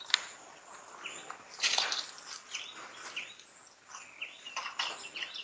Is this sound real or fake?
real